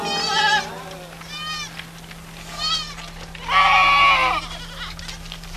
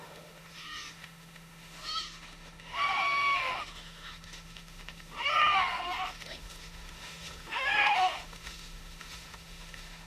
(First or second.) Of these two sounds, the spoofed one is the second